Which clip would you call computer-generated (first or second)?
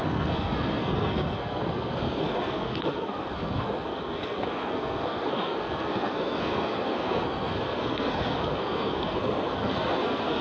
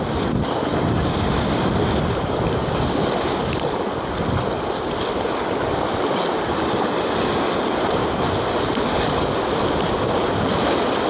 first